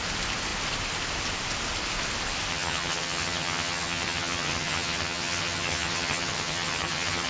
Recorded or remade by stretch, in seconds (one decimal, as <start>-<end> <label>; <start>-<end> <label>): 0.0-2.5 recorded; 2.5-7.3 remade